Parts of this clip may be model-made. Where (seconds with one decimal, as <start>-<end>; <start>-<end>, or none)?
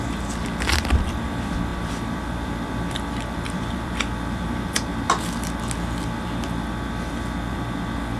1.7-5.2